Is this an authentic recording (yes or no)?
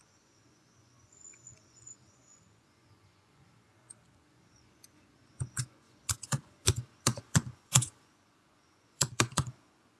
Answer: no